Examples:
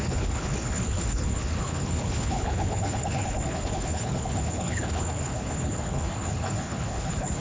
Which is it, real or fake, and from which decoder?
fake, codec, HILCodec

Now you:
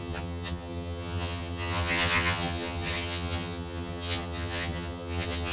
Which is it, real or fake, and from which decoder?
fake, vocoder, HiFi-GAN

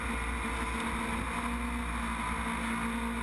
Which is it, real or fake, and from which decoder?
real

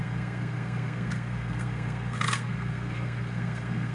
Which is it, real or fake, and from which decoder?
fake, codec, SNAC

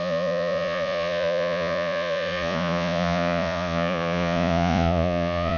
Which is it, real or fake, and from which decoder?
fake, vocoder, Vocos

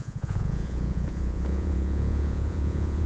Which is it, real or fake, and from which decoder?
fake, vocoder, Vocos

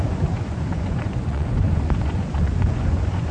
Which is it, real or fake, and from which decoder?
fake, vocoder, Vocos